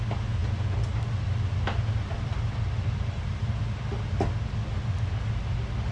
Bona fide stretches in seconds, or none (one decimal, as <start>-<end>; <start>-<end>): 0.0-5.9